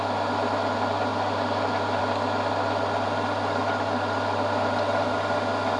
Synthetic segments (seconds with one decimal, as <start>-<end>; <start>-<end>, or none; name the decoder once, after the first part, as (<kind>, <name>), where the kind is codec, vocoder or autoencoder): none